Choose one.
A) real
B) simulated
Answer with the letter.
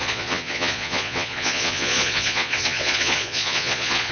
B